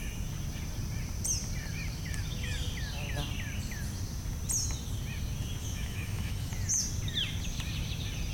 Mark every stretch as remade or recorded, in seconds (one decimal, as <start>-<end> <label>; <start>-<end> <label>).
0.0-5.6 recorded; 5.6-6.5 remade; 6.5-8.3 recorded